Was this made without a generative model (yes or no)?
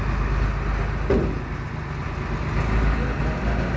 yes